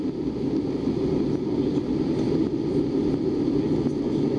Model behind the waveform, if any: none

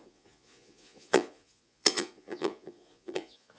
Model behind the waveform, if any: vocoder, Vocos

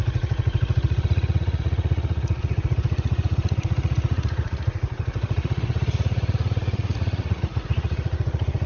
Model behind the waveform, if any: vocoder, Vocos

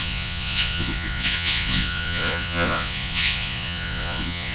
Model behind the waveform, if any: vocoder, Vocos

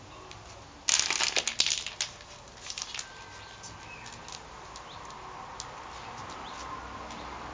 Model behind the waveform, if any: none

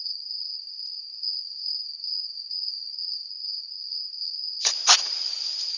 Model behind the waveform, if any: none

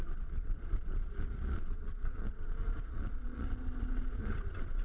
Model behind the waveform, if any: vocoder, Vocos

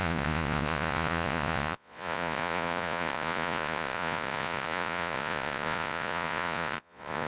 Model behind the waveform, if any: vocoder, Vocos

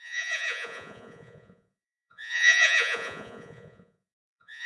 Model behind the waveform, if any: vocoder, Vocos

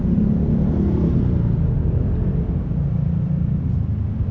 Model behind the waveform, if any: none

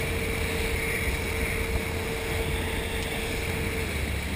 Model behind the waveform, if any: none